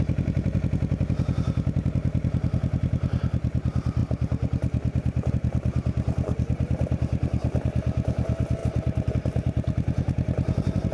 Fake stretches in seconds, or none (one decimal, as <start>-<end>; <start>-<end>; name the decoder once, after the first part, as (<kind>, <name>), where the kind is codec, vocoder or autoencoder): none